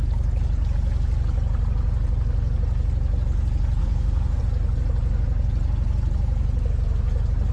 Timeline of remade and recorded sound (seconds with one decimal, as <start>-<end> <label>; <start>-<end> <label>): 0.0-3.8 recorded; 3.8-4.4 remade; 4.4-7.5 recorded